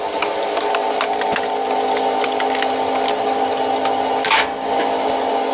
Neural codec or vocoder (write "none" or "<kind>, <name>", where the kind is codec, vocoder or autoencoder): none